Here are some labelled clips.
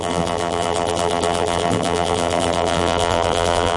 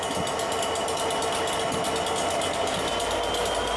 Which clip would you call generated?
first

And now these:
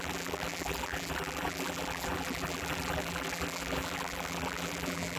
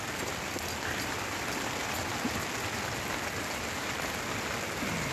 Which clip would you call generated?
first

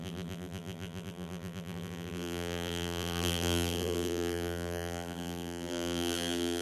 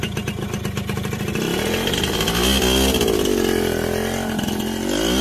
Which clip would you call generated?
first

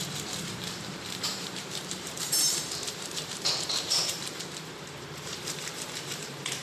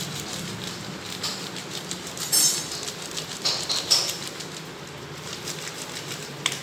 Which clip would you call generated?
first